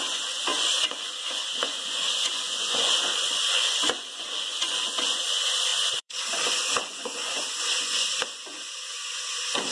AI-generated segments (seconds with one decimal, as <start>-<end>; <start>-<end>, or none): 0.0-9.7